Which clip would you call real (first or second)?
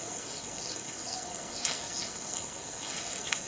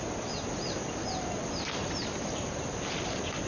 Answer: second